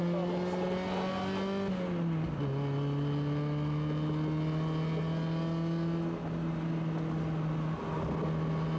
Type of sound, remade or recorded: recorded